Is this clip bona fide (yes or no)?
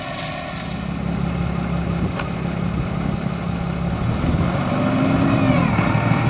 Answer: yes